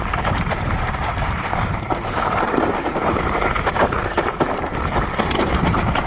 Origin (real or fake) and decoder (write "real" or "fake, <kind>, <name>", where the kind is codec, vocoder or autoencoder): fake, vocoder, BigVGAN v2